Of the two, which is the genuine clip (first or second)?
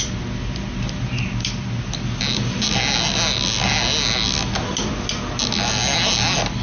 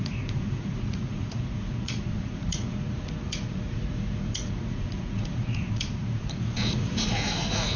first